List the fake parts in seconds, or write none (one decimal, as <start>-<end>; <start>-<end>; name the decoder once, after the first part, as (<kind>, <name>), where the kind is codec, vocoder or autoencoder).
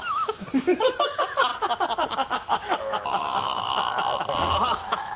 0.0-1.5 (autoencoder, DAC-VAE); 2.3-3.7; 4.7-5.2